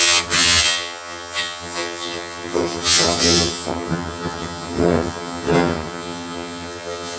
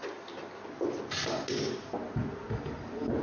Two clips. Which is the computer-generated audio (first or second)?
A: first